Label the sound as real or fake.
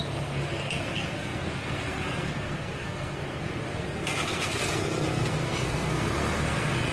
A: fake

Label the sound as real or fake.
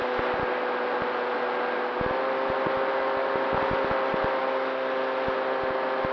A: real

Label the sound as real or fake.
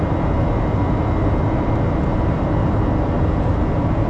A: real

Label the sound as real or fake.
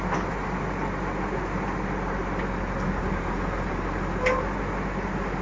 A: real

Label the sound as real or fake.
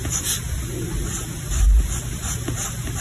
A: real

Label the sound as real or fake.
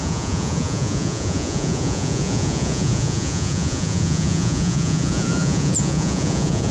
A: fake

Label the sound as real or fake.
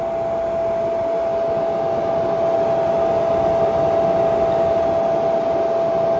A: real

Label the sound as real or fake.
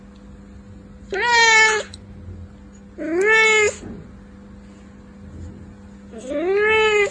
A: real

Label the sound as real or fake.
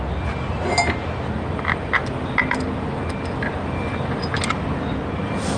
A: real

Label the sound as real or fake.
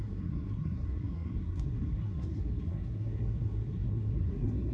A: fake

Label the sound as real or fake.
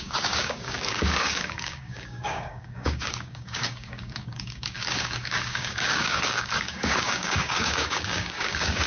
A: fake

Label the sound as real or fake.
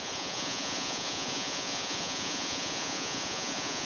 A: fake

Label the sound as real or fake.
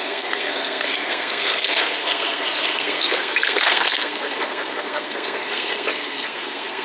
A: fake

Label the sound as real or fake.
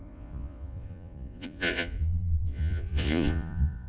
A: fake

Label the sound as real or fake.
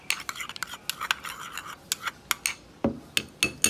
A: real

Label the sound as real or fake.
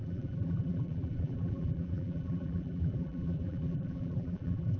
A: fake